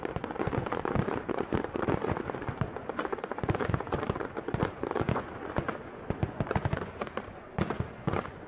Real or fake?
fake